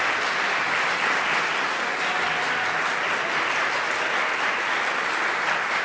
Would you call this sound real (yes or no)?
yes